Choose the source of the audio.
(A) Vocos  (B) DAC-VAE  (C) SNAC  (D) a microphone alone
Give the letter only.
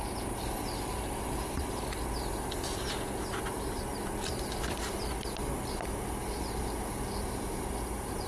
D